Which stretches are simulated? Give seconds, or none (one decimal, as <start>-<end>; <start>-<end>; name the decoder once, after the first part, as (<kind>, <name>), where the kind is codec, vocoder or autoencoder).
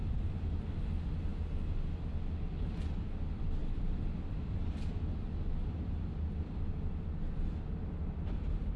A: none